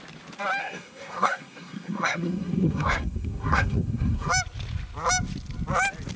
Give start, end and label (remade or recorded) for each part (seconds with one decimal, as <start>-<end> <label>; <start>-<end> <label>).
0.0-0.6 recorded; 0.6-4.3 remade; 4.3-6.2 recorded